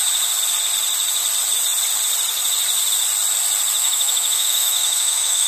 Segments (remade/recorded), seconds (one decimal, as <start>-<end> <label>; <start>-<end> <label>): 0.0-3.8 recorded; 3.8-5.5 remade